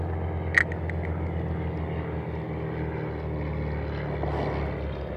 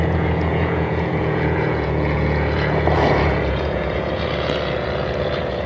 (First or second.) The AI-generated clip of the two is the second